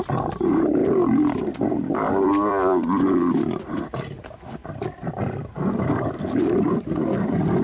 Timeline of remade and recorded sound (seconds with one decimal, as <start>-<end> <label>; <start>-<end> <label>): 0.0-0.8 recorded; 0.8-2.1 remade; 2.1-2.5 recorded; 2.5-7.1 remade; 7.1-7.6 recorded